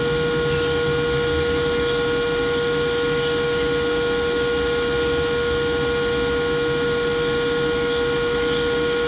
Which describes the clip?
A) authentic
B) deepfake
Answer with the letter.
A